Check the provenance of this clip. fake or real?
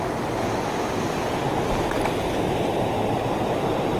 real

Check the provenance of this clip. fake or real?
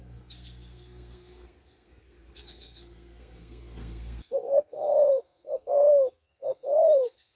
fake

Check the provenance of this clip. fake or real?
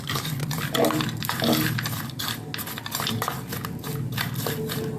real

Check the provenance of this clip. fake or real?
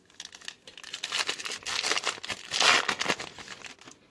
real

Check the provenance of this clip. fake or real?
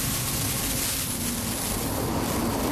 real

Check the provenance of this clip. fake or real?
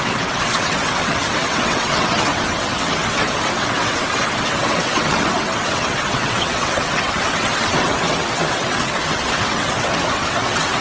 fake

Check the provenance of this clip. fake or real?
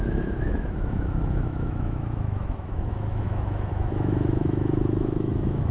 fake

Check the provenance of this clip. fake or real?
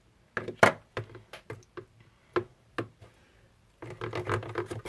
real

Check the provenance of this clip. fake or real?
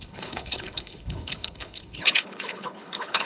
fake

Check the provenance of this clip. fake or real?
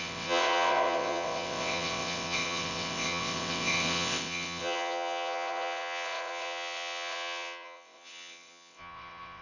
fake